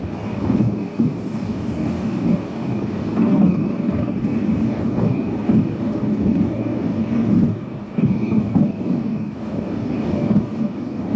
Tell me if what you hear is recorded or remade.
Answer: remade